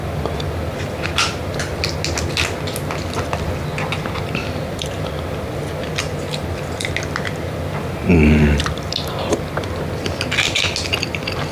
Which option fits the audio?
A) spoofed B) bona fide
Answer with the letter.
B